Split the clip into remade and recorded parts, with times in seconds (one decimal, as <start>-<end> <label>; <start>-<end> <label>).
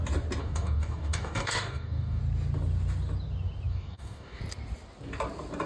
0.0-0.4 recorded; 0.4-2.2 remade; 2.2-3.7 recorded; 3.7-4.4 remade; 4.4-5.7 recorded